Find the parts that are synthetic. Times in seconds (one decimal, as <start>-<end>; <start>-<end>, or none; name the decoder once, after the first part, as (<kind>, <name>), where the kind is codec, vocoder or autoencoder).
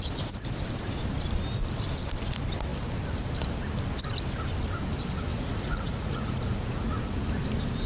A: 5.3-6.9 (vocoder, Vocos)